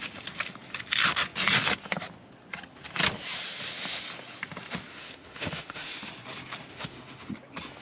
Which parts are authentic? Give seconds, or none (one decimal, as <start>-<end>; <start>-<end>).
0.0-4.9; 6.1-6.7; 7.3-7.8